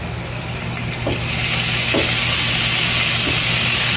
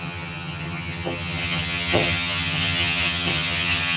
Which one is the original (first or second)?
first